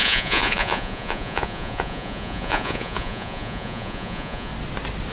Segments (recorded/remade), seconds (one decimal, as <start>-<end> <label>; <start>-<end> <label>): 0.0-4.5 remade; 4.5-5.1 recorded